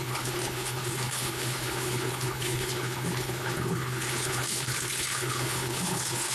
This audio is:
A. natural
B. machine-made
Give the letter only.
B